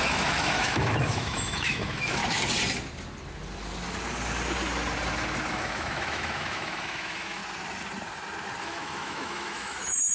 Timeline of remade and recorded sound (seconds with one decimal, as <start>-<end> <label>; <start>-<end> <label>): 0.0-2.2 remade; 2.2-5.5 recorded; 5.5-7.4 remade; 7.4-8.6 recorded; 8.6-10.1 remade